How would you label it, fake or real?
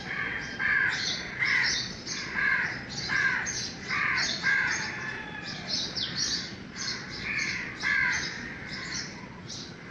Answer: fake